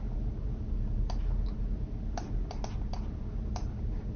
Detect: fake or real real